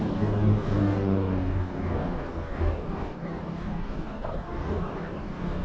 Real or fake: fake